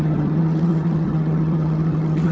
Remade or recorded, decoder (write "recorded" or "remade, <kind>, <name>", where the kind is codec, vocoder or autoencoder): remade, vocoder, HiFi-GAN